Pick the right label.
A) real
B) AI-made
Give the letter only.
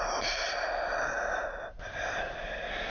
A